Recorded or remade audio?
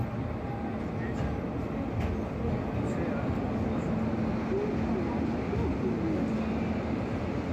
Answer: recorded